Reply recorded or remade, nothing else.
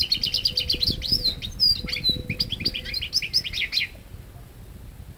recorded